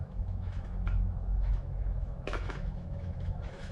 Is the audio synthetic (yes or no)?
yes